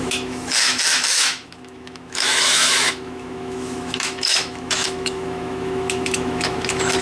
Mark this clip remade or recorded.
remade